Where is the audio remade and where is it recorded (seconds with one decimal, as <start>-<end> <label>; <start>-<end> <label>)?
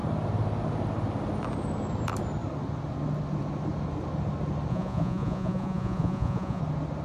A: 0.0-4.7 recorded; 4.7-6.6 remade; 6.6-7.0 recorded